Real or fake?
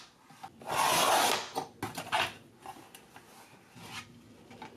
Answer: real